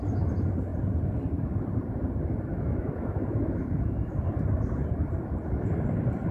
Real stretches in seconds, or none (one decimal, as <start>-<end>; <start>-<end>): 0.0-2.5; 4.2-6.3